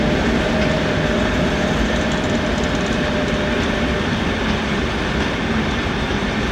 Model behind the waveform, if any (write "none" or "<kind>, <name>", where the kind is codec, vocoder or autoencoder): none